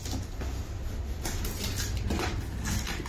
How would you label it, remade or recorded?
recorded